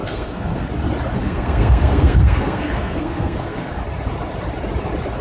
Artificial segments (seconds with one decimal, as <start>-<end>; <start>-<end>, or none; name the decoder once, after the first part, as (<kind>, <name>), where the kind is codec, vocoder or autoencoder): 0.0-0.7 (codec, SNAC); 1.2-3.7